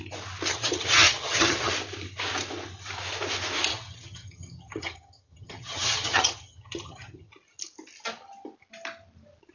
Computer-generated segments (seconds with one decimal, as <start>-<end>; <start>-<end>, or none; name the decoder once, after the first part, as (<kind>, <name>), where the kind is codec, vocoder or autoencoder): 0.5-1.7 (vocoder, HiFi-GAN); 3.7-7.3